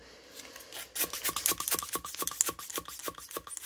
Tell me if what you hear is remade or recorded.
recorded